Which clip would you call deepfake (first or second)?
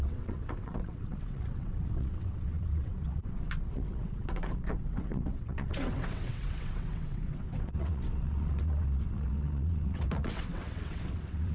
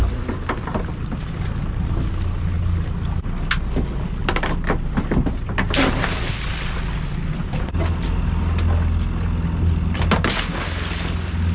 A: first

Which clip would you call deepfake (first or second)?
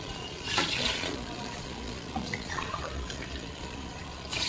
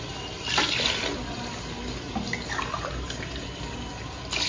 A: first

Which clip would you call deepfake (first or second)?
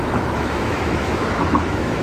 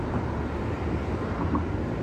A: first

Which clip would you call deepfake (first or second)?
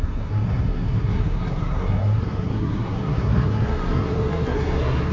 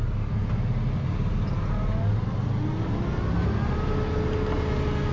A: first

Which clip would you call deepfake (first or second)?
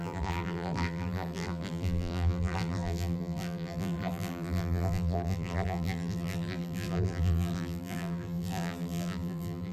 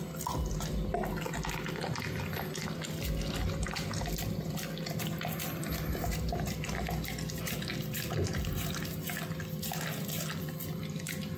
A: first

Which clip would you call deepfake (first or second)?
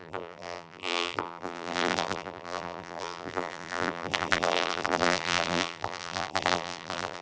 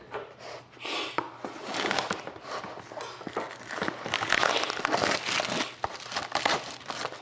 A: first